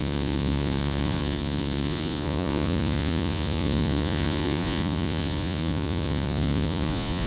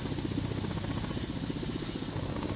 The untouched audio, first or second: second